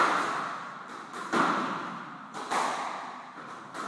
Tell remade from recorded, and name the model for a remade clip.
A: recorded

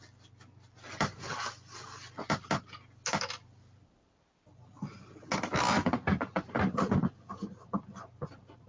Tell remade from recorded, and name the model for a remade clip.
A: recorded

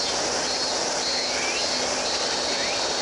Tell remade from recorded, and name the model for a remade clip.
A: recorded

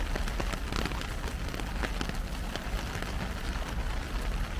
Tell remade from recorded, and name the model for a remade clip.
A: recorded